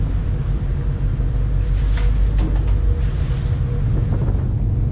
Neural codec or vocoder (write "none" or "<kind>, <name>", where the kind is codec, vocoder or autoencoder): none